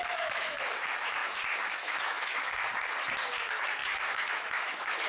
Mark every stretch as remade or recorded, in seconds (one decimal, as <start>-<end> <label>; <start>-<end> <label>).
0.0-1.2 remade; 1.2-1.7 recorded; 1.7-2.7 remade; 2.7-3.4 recorded; 3.4-5.1 remade